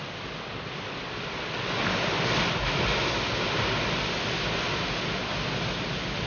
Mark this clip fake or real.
real